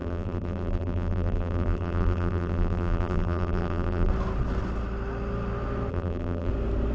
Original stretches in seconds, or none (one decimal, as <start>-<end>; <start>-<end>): 4.1-5.9; 6.5-6.9

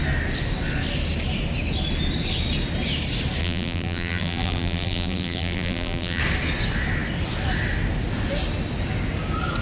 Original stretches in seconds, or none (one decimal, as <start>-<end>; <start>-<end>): 0.0-3.4; 6.2-9.6

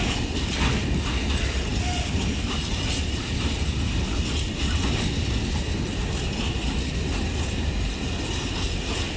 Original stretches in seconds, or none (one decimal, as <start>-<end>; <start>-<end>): 0.0-9.2